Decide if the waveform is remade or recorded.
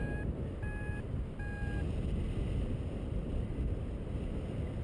recorded